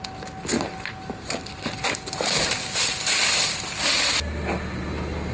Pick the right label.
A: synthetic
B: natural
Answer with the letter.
B